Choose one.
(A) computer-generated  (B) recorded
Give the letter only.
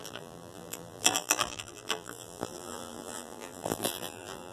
A